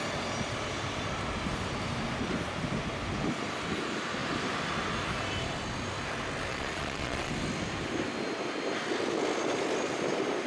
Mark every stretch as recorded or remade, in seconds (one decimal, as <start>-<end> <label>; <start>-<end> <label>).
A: 0.0-6.5 recorded; 6.5-7.3 remade; 7.3-10.5 recorded